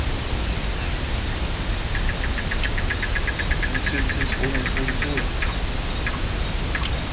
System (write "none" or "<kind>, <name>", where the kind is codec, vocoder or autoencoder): none